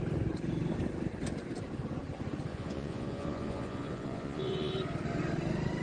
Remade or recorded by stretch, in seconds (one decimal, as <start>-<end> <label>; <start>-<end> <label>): 0.0-2.5 recorded; 2.5-4.7 remade; 4.7-5.8 recorded